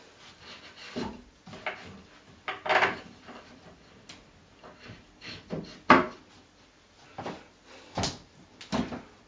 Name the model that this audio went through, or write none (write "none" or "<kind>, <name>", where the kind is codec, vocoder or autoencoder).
none